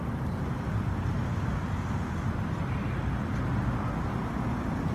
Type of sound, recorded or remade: recorded